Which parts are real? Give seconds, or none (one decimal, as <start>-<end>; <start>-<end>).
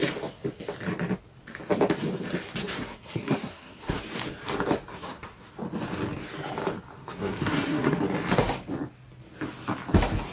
0.0-2.6; 4.0-4.9; 5.5-7.0; 8.0-10.3